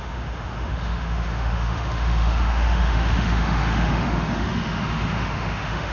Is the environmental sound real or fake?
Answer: fake